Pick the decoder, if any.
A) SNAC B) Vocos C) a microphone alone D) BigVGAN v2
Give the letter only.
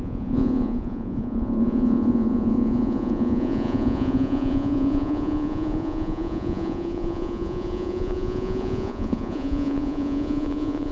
B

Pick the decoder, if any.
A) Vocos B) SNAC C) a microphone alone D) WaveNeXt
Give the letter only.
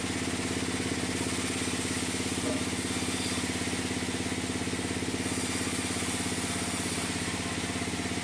C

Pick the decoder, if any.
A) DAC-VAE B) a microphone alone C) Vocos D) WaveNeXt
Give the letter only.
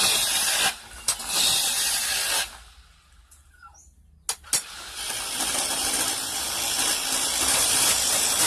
B